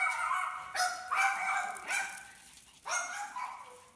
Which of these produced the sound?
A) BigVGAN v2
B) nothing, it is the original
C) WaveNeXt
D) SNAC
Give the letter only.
B